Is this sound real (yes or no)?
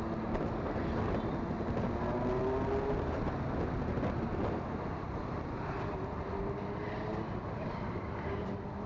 yes